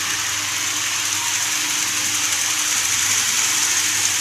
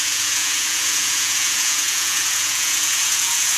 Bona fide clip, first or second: first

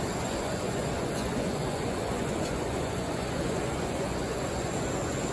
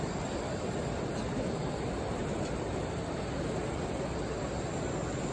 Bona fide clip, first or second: second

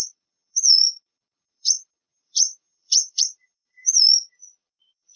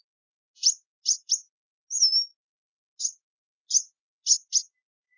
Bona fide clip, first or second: second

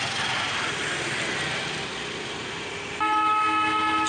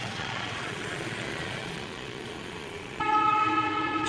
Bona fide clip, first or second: first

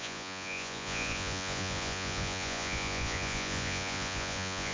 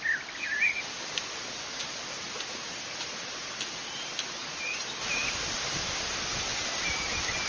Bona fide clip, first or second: second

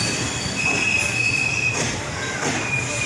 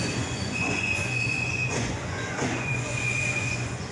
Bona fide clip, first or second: first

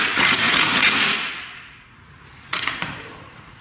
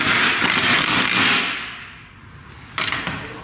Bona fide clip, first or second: second